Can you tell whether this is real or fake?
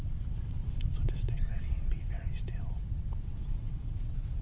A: fake